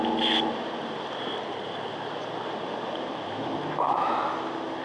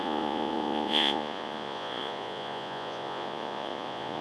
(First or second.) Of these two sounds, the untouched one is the first